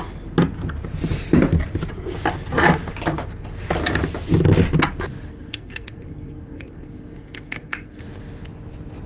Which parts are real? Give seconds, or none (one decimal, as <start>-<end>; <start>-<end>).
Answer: 0.0-5.3; 8.0-9.1